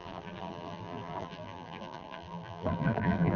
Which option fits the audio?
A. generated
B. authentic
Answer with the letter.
A